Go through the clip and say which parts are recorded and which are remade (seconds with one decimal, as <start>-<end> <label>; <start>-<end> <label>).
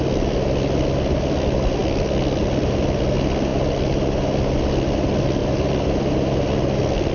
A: 0.0-7.1 recorded